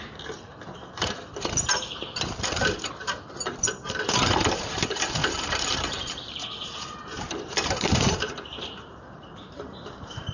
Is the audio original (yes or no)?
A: no